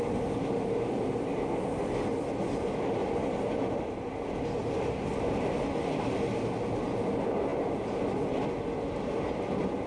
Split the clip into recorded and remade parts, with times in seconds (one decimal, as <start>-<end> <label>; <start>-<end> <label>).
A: 0.0-9.9 recorded